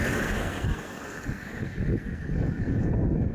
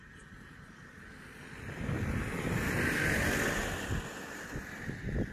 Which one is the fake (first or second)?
first